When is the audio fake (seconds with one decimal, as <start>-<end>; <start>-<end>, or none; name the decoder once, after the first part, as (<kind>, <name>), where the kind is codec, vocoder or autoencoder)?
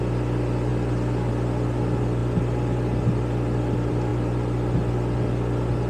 none